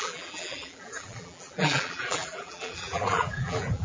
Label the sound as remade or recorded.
remade